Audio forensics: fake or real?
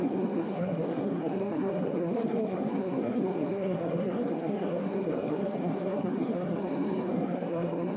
fake